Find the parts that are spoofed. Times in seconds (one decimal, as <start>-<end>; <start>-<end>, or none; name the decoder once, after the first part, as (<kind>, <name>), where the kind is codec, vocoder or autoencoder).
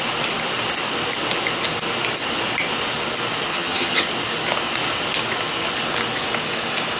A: 3.5-4.1 (vocoder, HiFi-GAN)